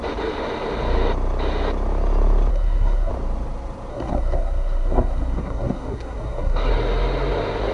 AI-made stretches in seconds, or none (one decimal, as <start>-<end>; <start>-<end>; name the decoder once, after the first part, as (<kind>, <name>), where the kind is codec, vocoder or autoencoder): 2.5-3.1 (codec, SNAC); 3.9-6.7